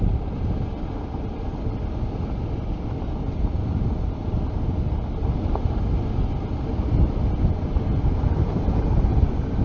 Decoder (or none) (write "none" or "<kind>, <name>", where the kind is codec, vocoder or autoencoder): none